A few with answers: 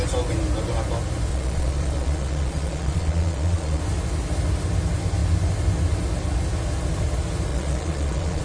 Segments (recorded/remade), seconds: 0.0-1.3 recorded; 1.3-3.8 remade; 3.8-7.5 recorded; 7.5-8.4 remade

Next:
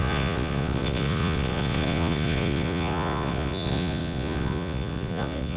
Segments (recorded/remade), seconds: 0.0-5.6 remade

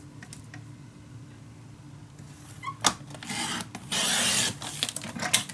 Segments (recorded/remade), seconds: 0.0-5.5 recorded

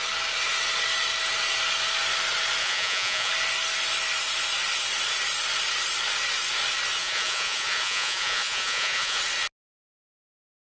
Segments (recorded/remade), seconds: 0.0-2.6 recorded; 2.6-3.3 remade; 3.3-7.0 recorded; 7.0-9.2 remade; 9.2-10.6 recorded

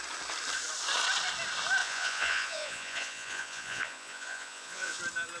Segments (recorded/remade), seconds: 0.0-1.8 recorded; 1.8-5.0 remade; 5.0-5.4 recorded